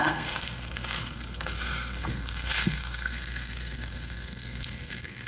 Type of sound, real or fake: fake